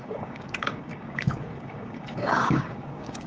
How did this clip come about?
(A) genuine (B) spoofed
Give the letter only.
B